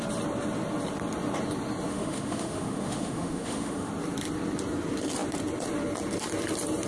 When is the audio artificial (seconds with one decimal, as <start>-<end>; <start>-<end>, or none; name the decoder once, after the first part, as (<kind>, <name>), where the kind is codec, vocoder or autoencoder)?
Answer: 1.9-3.9 (autoencoder, DAC-VAE)